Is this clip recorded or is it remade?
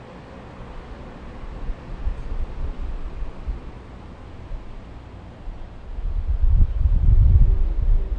recorded